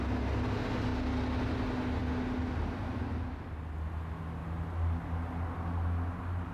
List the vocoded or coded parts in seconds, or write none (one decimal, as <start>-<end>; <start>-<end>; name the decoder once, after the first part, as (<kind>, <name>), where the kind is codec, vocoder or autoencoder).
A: none